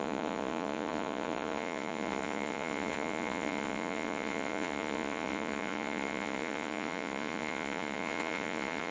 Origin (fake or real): fake